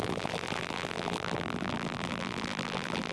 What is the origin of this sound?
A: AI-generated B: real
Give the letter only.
A